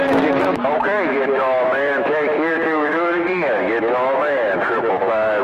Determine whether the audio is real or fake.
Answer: fake